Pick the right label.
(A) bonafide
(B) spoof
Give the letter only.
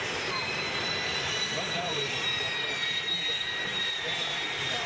B